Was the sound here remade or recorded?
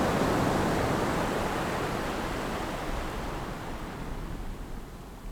recorded